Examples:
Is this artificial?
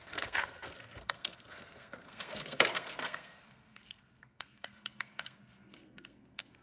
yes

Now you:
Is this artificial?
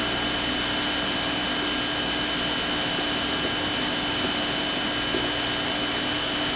no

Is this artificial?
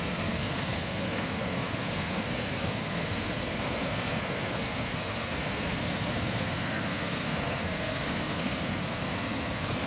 yes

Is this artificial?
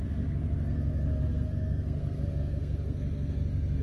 yes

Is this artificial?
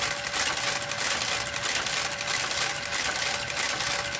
no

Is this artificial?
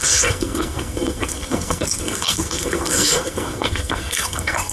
yes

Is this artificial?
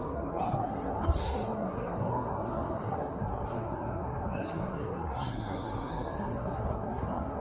yes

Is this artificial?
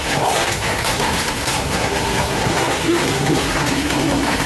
yes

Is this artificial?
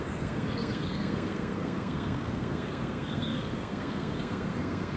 yes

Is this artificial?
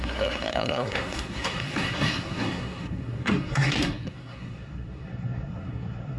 yes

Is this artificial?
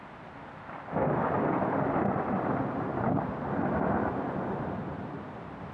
no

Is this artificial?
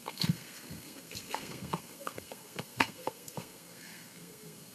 yes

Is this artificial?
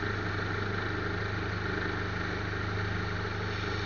no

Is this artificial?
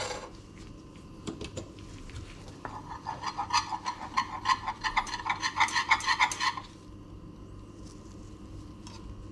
no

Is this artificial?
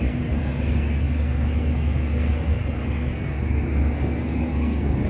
yes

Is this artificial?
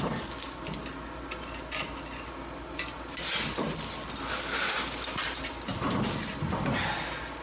no